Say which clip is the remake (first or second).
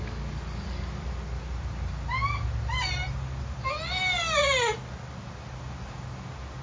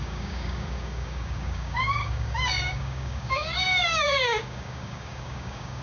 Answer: second